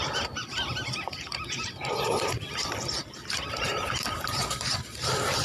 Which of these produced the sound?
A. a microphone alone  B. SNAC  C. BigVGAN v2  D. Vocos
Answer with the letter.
A